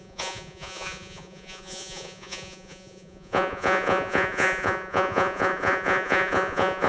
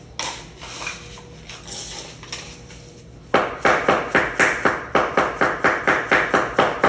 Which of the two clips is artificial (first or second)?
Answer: first